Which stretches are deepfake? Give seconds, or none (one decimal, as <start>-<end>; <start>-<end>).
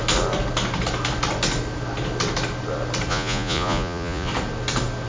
3.1-4.3